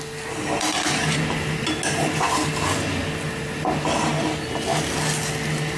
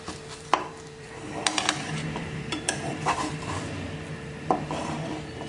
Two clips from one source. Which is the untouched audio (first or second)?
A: first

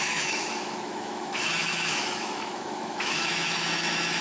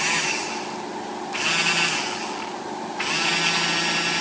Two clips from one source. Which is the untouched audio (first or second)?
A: second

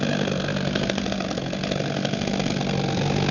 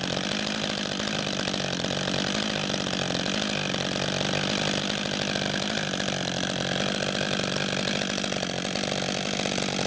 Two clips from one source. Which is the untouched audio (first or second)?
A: second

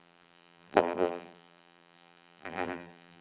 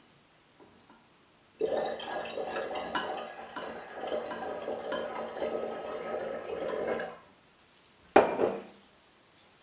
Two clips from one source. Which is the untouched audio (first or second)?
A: second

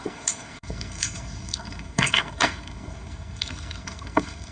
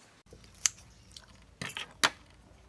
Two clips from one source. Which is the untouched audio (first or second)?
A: second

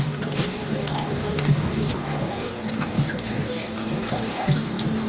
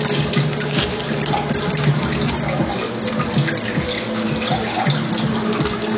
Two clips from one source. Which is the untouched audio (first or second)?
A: second